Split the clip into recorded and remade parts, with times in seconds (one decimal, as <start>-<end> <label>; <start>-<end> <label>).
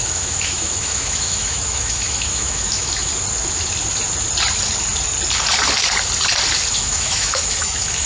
0.0-3.1 remade; 3.1-6.7 recorded; 6.7-8.1 remade